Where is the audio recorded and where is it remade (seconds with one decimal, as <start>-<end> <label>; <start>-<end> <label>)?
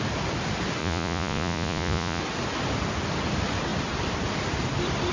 0.0-0.8 recorded; 0.8-2.2 remade; 2.2-5.1 recorded